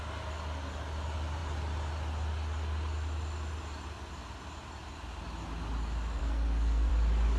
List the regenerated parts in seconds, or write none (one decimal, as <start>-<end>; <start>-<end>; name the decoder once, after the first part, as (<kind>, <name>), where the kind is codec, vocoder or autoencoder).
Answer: 6.2-6.9 (codec, SNAC)